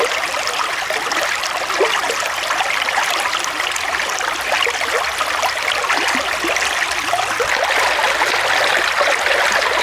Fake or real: real